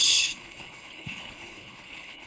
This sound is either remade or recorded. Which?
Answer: remade